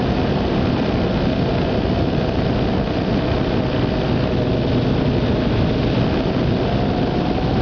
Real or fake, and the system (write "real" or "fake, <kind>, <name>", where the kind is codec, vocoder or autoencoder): real